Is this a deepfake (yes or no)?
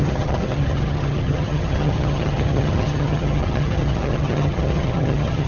yes